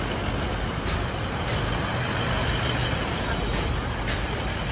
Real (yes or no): yes